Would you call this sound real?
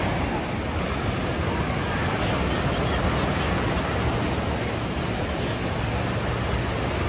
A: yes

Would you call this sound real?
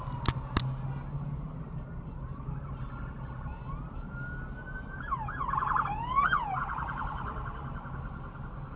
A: yes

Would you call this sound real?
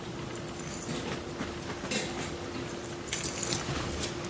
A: yes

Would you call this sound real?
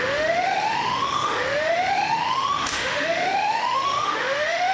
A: no